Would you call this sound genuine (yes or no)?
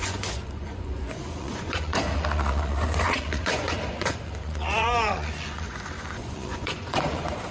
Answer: no